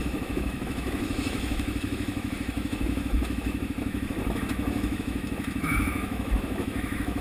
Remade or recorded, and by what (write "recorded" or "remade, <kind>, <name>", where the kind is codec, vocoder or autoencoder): remade, autoencoder, DAC-VAE